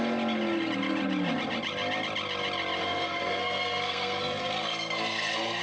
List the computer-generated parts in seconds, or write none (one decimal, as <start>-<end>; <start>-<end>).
2.8-5.6